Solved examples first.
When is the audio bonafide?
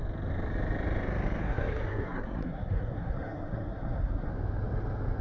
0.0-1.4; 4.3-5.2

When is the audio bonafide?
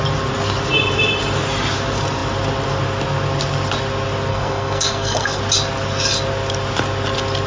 0.0-4.3; 5.4-7.5